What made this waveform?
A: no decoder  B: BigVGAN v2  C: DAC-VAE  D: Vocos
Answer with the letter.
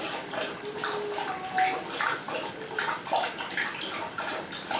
A